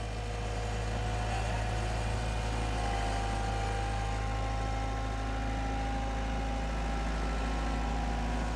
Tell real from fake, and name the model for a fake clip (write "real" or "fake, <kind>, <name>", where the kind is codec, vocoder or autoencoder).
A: real